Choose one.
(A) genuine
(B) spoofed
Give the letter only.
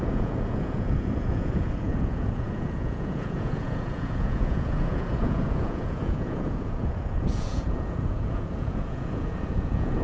B